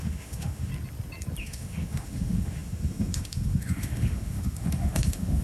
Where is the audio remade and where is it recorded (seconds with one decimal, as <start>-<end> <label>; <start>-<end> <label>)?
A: 0.0-0.7 remade; 0.7-1.4 recorded; 1.4-5.4 remade